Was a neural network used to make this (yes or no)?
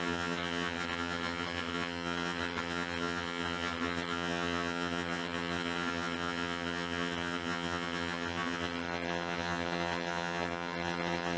yes